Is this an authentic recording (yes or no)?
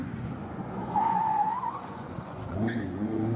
no